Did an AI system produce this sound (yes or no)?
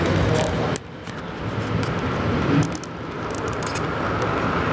no